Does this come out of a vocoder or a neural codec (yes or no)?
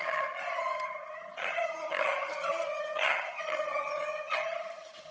yes